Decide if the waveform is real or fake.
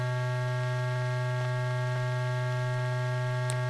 real